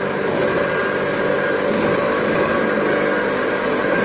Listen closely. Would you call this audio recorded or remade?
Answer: recorded